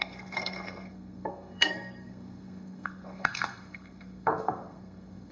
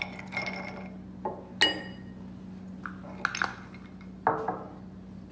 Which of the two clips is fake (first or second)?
first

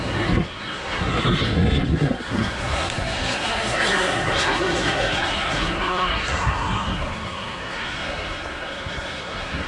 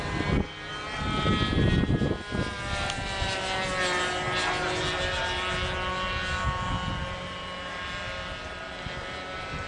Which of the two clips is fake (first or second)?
first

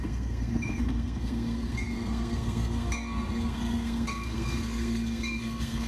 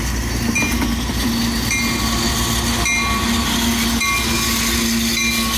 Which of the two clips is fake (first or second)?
first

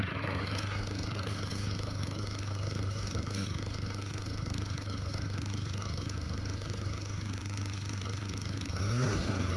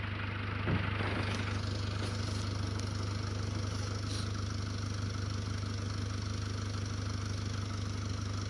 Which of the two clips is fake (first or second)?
first